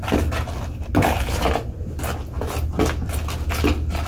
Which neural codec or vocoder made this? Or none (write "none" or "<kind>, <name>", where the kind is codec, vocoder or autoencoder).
none